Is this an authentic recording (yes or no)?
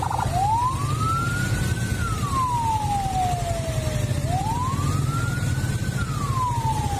yes